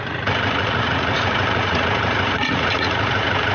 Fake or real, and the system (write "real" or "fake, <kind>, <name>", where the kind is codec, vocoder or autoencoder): fake, vocoder, Vocos